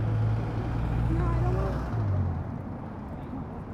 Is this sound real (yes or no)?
yes